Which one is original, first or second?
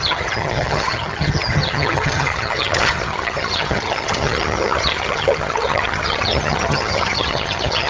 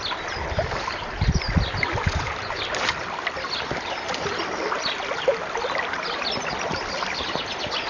second